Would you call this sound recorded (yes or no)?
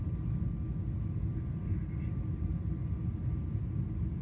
yes